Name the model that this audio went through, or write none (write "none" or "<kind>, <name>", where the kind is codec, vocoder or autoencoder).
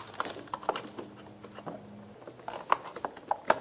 none